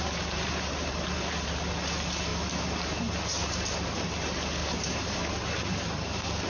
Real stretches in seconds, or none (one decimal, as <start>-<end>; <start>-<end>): none